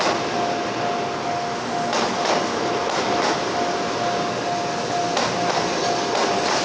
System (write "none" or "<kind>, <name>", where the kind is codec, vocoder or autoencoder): none